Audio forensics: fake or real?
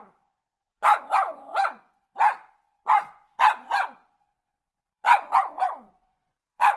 fake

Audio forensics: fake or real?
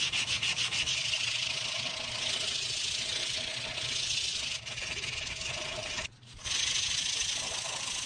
fake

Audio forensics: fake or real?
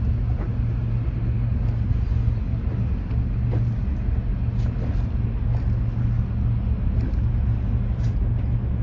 real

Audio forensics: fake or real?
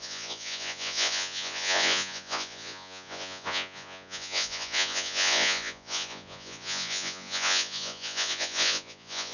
fake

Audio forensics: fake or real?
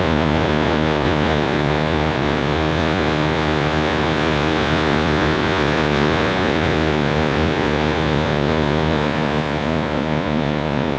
fake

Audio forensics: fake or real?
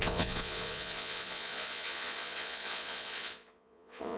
fake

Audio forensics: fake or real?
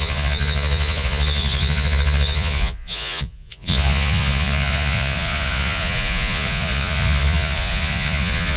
fake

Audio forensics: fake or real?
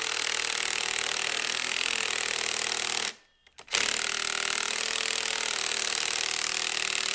real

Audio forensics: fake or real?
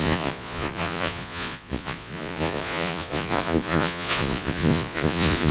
fake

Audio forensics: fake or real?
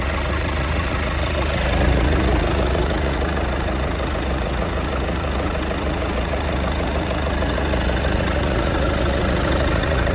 fake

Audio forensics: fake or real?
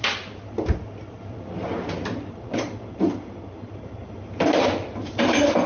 real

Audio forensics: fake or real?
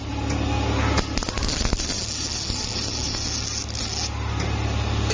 real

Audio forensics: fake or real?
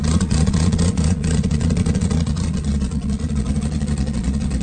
fake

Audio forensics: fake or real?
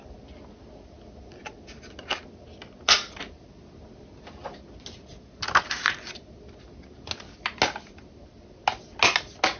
real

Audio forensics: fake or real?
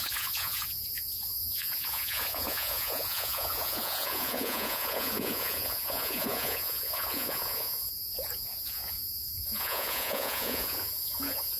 fake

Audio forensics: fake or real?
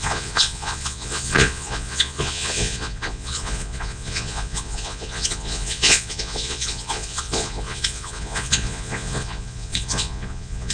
fake